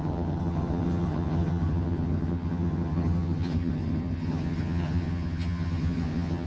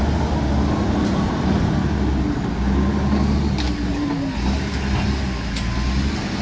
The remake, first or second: first